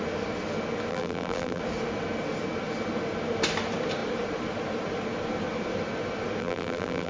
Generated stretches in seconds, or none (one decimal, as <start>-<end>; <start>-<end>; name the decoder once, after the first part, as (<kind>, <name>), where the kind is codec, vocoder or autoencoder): 0.9-1.6 (vocoder, BigVGAN v2); 6.4-7.1